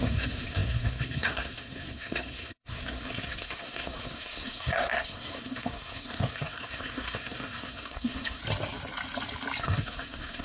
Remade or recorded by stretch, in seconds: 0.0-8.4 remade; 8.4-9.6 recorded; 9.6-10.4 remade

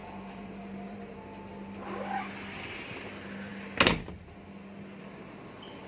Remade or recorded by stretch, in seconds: 0.0-1.5 remade; 1.5-5.9 recorded

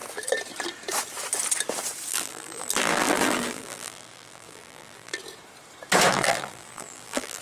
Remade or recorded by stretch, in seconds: 0.0-2.1 recorded; 2.1-5.2 remade; 5.2-6.1 recorded; 6.1-7.4 remade

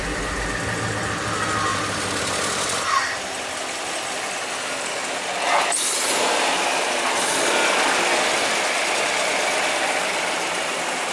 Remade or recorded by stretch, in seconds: 0.0-11.1 recorded

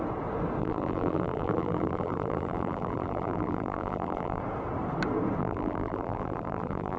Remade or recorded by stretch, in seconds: 0.0-0.6 recorded; 0.6-4.4 remade; 4.4-5.4 recorded; 5.4-7.0 remade

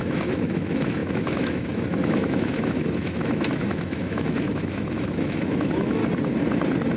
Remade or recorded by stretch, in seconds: 0.0-6.0 remade; 6.0-7.0 recorded